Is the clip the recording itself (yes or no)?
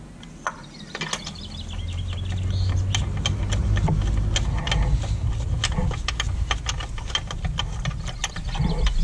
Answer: yes